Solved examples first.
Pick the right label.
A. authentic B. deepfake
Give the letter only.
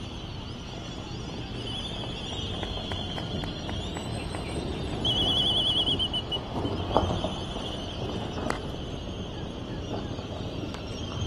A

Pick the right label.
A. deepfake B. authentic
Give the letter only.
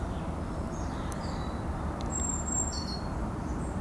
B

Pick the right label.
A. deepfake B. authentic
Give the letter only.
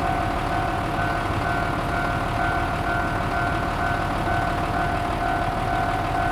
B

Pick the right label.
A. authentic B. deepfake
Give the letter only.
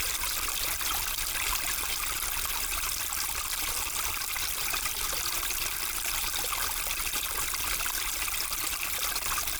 A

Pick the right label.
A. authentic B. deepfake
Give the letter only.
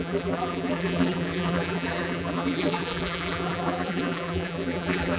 B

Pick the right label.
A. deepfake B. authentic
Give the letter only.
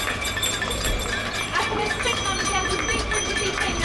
A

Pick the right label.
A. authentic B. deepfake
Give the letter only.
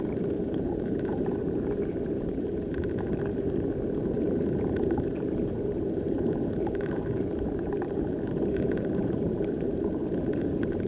B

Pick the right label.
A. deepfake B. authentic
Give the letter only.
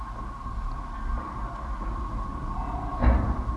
B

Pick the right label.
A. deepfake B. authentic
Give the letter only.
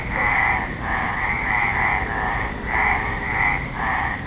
A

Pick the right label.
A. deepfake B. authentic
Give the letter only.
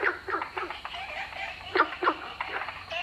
B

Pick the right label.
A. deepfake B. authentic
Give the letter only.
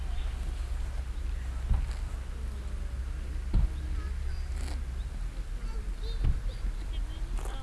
B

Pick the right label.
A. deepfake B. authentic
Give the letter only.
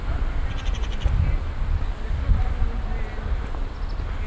B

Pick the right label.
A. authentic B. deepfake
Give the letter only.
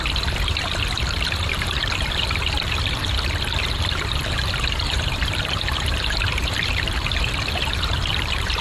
B